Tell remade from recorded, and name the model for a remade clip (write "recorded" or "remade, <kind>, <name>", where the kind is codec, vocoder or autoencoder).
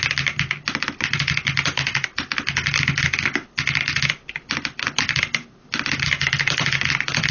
recorded